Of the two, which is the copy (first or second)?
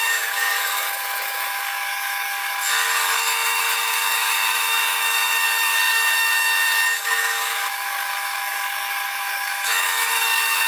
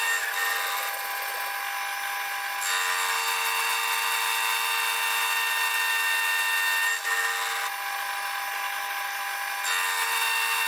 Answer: first